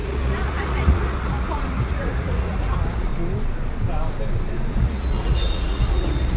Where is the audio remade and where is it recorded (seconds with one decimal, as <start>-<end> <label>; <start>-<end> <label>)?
0.0-3.1 remade; 3.1-4.7 recorded; 4.7-6.4 remade